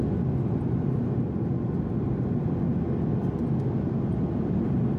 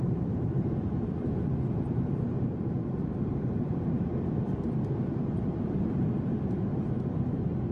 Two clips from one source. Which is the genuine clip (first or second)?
first